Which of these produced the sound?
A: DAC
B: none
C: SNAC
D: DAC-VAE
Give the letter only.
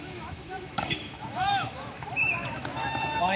D